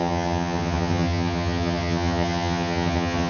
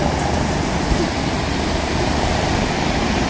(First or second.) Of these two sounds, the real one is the second